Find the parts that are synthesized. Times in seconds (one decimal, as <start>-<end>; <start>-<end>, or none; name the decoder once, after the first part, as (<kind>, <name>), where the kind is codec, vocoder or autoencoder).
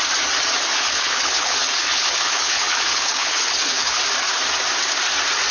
0.7-4.0 (codec, HILCodec)